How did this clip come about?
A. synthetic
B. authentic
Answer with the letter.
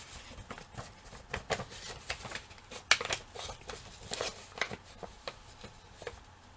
B